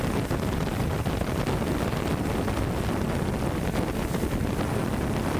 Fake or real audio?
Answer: real